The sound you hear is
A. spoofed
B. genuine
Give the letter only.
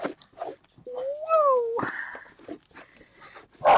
B